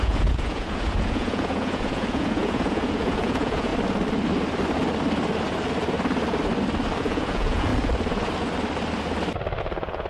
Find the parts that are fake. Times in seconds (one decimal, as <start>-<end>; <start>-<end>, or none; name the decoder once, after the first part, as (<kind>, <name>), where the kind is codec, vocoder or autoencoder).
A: 0.0-3.7 (vocoder, Vocos); 7.0-7.7; 9.6-10.1